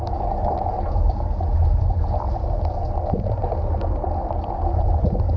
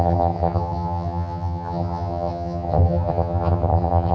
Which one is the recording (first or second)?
first